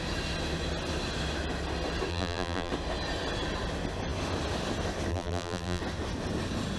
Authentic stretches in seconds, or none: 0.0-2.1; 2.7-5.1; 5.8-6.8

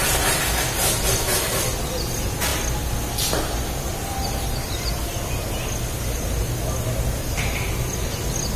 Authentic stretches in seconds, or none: 0.0-3.9; 5.0-8.6

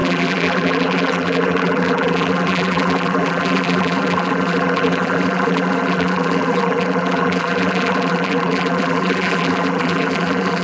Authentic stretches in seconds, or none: none

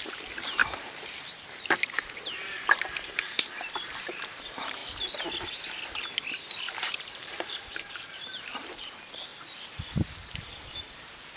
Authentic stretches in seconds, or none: 0.6-1.4; 4.8-6.9

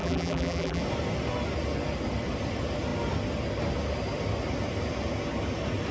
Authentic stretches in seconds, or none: 0.8-5.9

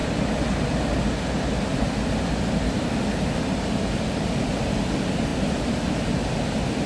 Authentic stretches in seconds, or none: 0.0-5.3; 6.0-6.9